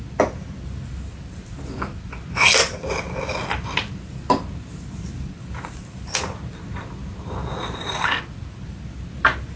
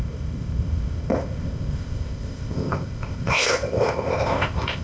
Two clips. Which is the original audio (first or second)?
first